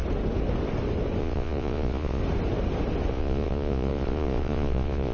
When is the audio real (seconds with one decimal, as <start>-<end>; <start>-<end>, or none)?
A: 0.0-1.2; 2.2-3.1